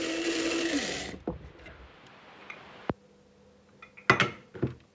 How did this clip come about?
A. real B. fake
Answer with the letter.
A